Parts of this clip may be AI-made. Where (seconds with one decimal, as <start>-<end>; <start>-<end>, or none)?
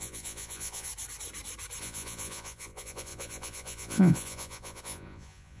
0.0-0.9; 1.8-5.6